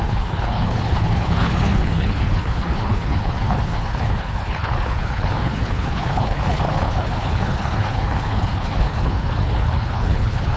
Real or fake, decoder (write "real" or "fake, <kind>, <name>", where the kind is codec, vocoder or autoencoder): fake, codec, HILCodec